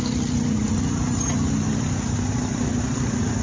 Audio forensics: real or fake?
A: real